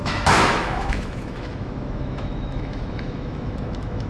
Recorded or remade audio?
remade